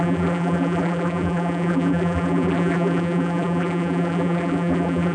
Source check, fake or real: fake